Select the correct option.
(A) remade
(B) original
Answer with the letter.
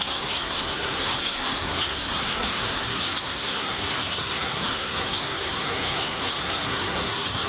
A